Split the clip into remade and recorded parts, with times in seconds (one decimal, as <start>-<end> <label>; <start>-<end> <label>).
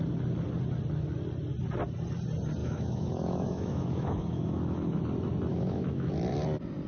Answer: 0.0-2.6 recorded; 2.6-5.0 remade; 5.0-5.5 recorded; 5.5-6.1 remade; 6.1-6.9 recorded